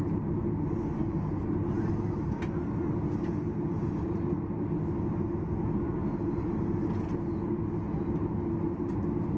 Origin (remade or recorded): recorded